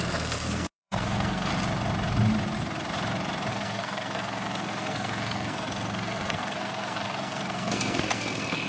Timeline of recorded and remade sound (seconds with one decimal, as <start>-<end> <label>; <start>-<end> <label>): 0.0-1.5 remade; 1.5-3.5 recorded; 3.5-8.7 remade

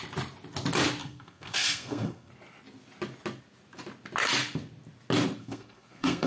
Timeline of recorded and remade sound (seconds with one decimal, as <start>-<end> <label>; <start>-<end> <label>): 0.0-1.0 recorded; 1.0-2.3 remade; 2.3-5.4 recorded; 5.4-6.3 remade

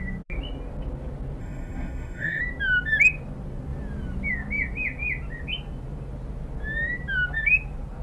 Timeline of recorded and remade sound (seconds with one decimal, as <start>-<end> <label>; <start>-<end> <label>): 0.0-1.4 recorded; 1.4-2.4 remade; 2.4-8.0 recorded